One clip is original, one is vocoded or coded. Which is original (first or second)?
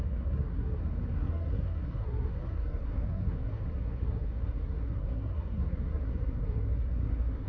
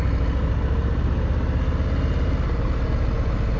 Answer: second